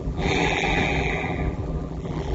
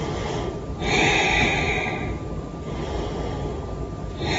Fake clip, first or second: first